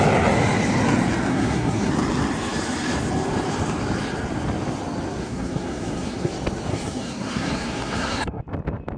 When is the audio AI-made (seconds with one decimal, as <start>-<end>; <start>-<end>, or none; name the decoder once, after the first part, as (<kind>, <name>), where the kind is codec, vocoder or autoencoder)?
1.3-1.9 (codec, SNAC); 5.2-6.3; 6.7-8.4